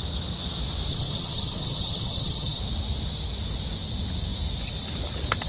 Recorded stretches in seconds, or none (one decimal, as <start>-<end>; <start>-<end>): 0.0-0.9; 2.6-5.5

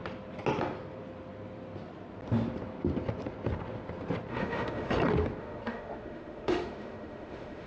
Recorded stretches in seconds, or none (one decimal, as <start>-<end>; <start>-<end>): 0.0-4.3; 4.9-5.4

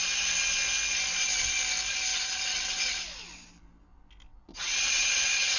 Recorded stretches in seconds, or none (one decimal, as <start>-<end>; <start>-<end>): 0.0-2.1; 3.0-4.3

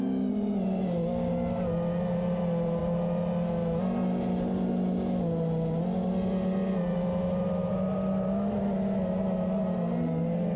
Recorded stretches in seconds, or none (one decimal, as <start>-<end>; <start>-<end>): 0.0-10.6